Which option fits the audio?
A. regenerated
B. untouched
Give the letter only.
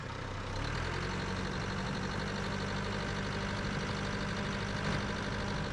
B